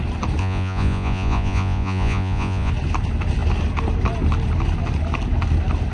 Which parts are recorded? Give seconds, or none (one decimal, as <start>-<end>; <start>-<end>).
0.0-0.4; 2.7-5.9